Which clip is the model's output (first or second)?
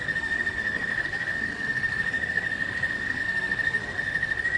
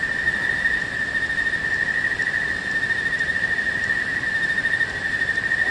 first